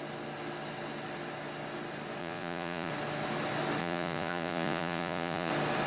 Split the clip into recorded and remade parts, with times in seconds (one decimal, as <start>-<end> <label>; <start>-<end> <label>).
0.0-2.2 recorded; 2.2-2.9 remade; 2.9-3.8 recorded; 3.8-5.5 remade; 5.5-5.9 recorded